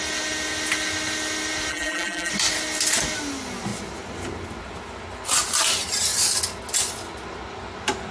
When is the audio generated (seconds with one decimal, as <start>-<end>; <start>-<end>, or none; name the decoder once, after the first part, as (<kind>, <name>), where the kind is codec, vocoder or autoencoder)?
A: 1.7-2.3 (vocoder, BigVGAN v2)